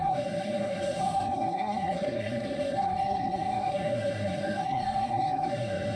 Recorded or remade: remade